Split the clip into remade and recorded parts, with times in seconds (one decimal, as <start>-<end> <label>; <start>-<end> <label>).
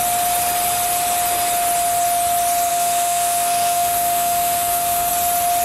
0.0-2.7 recorded; 2.7-5.1 remade; 5.1-5.6 recorded